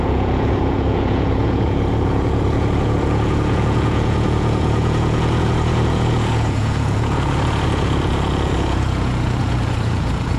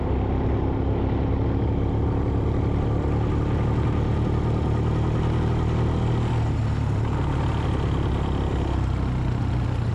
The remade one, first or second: first